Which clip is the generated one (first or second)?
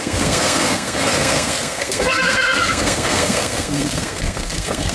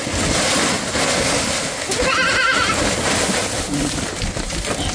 first